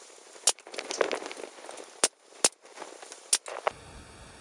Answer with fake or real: real